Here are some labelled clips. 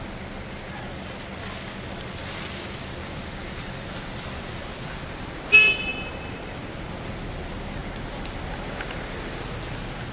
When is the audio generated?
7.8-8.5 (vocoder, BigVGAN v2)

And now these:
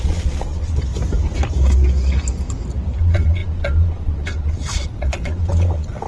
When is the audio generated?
0.0-0.9 (vocoder, Vocos); 3.0-6.1

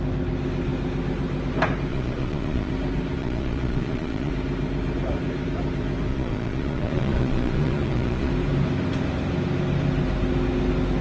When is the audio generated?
1.9-2.7 (vocoder, Vocos); 3.2-4.3; 6.1-8.3

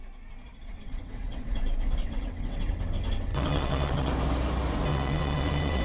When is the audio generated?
0.7-1.6 (vocoder, WaveNeXt); 2.0-2.8; 3.3-4.1; 4.9-5.8